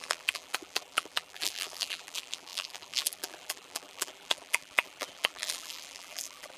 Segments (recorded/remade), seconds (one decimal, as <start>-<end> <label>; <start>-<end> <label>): 0.0-6.6 remade